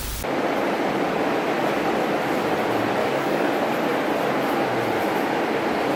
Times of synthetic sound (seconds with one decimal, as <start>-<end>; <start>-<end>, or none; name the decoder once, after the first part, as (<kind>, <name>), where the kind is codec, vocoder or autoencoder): 3.0-3.5 (codec, DAC)